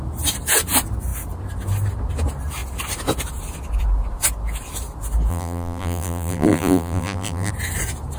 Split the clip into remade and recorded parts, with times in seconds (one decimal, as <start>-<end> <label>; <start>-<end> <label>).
0.0-5.3 recorded; 5.3-7.5 remade; 7.5-8.2 recorded